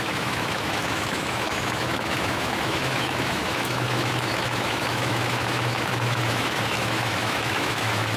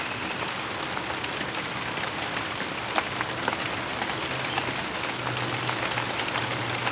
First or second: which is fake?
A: first